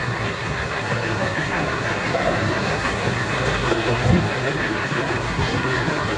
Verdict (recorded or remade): remade